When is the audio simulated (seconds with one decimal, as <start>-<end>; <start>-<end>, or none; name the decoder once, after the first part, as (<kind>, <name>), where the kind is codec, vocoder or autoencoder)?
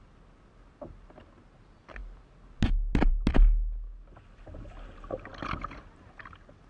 none